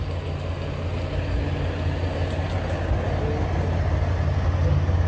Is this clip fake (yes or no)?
no